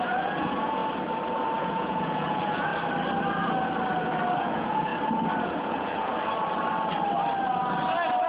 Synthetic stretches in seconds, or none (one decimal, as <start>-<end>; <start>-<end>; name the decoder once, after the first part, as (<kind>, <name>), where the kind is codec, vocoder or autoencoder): 0.0-0.8 (vocoder, Vocos); 1.6-2.7; 4.4-4.9; 5.4-6.1